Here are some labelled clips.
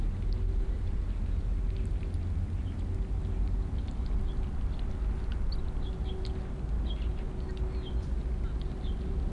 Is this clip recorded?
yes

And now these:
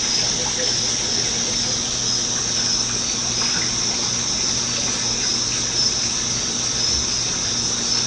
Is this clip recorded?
yes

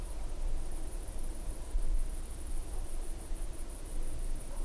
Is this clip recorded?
no